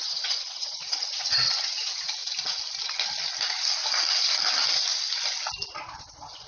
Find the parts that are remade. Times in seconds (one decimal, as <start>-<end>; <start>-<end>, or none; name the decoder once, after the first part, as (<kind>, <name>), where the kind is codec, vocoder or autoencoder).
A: 0.0-2.2 (vocoder, Vocos); 5.7-6.5